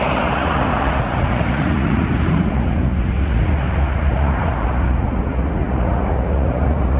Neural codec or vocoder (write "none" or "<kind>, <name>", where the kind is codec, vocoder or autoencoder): vocoder, Vocos